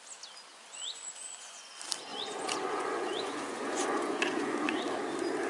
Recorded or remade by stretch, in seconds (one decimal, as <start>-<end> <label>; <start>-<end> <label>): 0.0-0.5 recorded; 0.5-1.6 remade; 1.6-2.1 recorded; 2.1-4.8 remade; 4.8-5.5 recorded

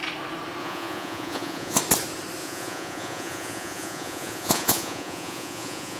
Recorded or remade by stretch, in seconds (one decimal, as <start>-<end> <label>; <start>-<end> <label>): 0.0-0.6 recorded; 0.6-1.8 remade; 1.8-2.4 recorded; 2.4-6.0 remade